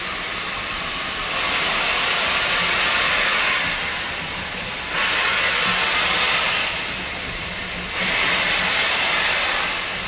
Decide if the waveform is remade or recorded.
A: recorded